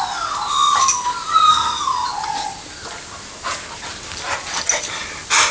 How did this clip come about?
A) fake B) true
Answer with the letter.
B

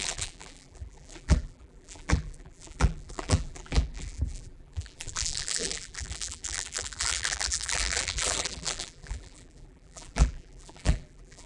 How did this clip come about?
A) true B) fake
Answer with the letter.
B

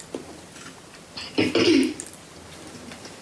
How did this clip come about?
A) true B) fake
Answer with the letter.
A